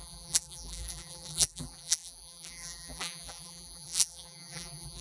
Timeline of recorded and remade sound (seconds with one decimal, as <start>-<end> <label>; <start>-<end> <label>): 0.0-5.0 remade